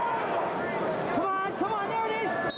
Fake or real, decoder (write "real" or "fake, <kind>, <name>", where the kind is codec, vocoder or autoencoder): real